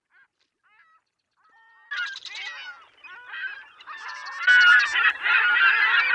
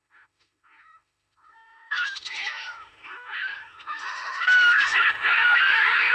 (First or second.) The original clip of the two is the first